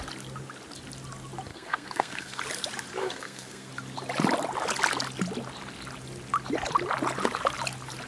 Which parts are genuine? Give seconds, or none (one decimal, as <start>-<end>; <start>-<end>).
0.0-1.5; 2.4-3.0; 3.7-8.1